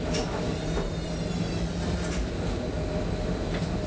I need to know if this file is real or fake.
real